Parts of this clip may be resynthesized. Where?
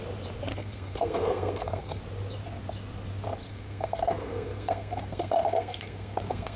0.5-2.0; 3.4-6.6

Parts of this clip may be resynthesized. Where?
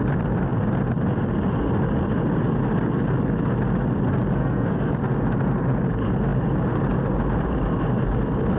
4.4-4.9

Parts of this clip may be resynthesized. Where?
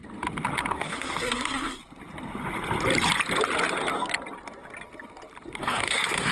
0.7-1.8; 5.6-6.3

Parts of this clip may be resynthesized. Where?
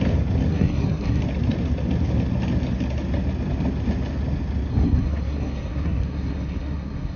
0.5-1.2; 4.7-7.2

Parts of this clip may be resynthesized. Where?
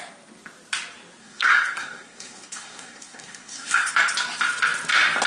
1.2-3.9